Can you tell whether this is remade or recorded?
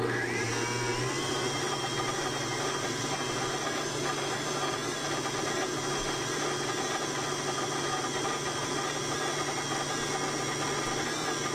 recorded